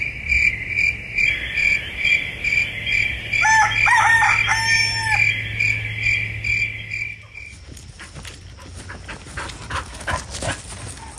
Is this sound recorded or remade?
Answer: recorded